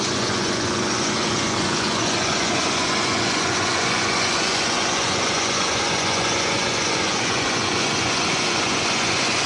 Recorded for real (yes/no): no